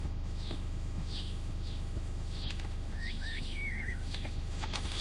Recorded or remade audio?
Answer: remade